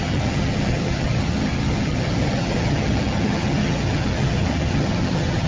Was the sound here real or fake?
fake